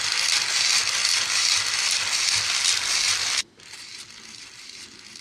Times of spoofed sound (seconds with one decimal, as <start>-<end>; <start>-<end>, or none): none